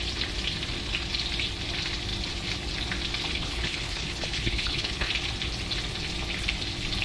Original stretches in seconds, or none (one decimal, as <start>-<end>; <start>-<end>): 0.0-3.3; 5.1-7.0